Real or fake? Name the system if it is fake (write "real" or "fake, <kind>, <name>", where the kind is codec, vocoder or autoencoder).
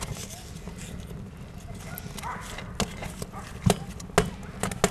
real